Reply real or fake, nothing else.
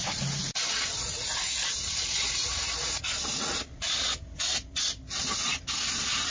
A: real